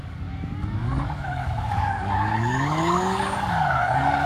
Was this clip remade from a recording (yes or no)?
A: yes